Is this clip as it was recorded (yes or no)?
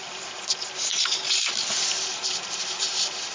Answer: yes